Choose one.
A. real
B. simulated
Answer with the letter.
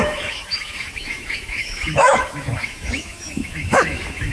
B